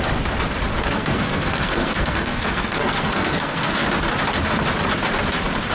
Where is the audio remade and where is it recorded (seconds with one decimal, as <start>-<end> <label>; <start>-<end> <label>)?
0.0-0.7 recorded; 0.7-3.7 remade; 3.7-5.7 recorded

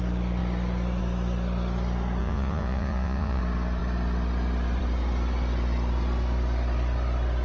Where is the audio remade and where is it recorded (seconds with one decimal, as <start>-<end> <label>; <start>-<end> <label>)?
0.0-2.2 recorded; 2.2-3.4 remade; 3.4-7.4 recorded

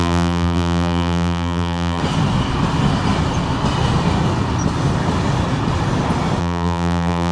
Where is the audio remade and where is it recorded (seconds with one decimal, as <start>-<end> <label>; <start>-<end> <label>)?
0.0-2.0 remade; 2.0-6.4 recorded; 6.4-7.3 remade

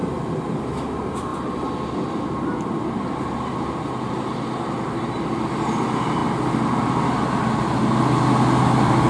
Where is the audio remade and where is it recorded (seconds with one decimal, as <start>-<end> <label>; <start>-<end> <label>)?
0.0-0.7 remade; 0.7-9.1 recorded

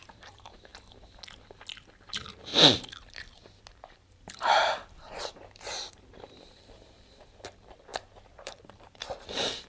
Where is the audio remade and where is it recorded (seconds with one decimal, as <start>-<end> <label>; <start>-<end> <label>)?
0.0-0.7 remade; 0.7-2.1 recorded; 2.1-2.5 remade; 2.5-3.7 recorded; 3.7-9.7 remade

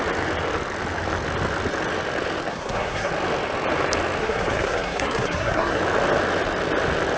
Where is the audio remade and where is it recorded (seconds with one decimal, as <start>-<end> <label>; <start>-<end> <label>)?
0.0-2.5 recorded; 2.5-3.1 remade; 3.1-4.2 recorded; 4.2-5.8 remade; 5.8-7.2 recorded